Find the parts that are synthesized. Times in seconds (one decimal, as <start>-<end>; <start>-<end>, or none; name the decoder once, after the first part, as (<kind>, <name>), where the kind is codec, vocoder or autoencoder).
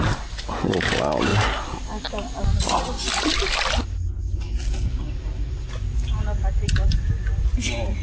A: 1.3-2.4 (vocoder, BigVGAN v2)